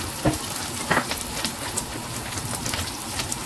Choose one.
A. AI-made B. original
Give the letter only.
B